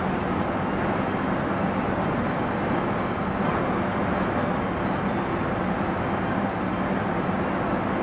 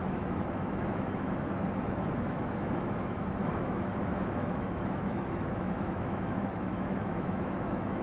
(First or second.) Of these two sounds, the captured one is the first